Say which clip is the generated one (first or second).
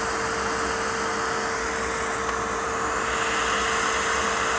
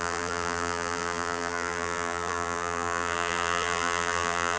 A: second